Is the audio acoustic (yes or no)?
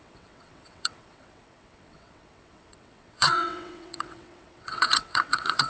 no